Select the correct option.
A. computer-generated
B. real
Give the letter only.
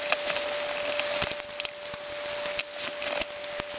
B